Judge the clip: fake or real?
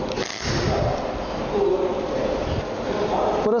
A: real